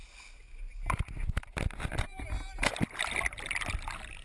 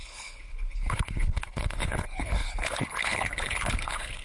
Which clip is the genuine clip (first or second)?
first